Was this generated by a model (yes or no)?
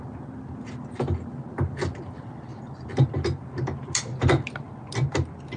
no